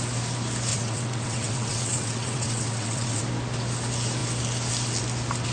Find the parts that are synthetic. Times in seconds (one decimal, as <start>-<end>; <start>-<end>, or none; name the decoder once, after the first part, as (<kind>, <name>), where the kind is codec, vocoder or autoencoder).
0.7-3.2 (vocoder, WaveNeXt)

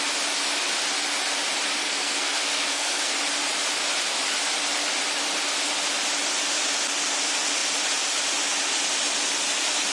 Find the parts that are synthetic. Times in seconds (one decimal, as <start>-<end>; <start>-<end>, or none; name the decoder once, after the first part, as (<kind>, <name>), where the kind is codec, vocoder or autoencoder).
1.8-3.1 (codec, SNAC)

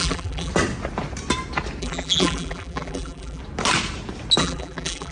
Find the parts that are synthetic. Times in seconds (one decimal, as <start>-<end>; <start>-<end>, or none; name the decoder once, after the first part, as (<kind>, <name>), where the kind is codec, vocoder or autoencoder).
0.0-0.5 (vocoder, BigVGAN v2); 1.8-3.4; 4.4-5.1

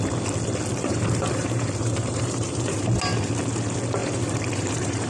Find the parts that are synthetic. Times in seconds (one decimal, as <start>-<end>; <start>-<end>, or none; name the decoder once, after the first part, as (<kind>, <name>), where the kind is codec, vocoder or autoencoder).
0.7-3.0 (vocoder, BigVGAN v2); 4.0-5.1